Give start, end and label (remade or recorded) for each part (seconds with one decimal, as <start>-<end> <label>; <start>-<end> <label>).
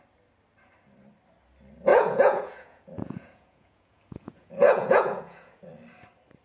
0.0-1.9 recorded; 1.9-5.7 remade; 5.7-6.4 recorded